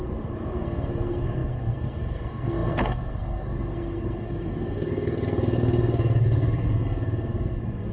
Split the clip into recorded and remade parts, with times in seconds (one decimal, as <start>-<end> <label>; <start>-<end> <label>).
0.0-7.9 remade